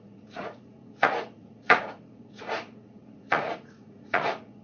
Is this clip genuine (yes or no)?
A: no